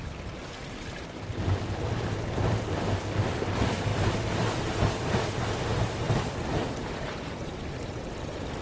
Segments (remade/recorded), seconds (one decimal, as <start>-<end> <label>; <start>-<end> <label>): 0.0-0.4 remade; 0.4-1.3 recorded; 1.3-3.9 remade; 3.9-6.5 recorded; 6.5-8.6 remade